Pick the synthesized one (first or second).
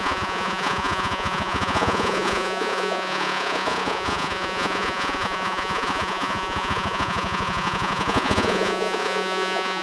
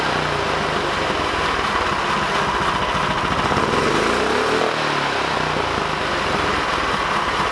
first